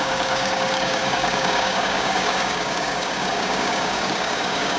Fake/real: fake